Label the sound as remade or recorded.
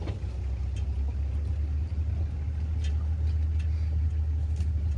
recorded